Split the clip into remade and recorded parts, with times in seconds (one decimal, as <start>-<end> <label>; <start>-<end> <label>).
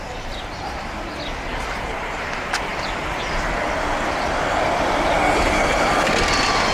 0.0-6.7 recorded